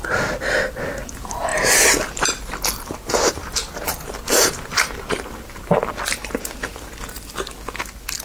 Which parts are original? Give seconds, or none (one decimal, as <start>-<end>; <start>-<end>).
0.0-1.5; 5.9-8.2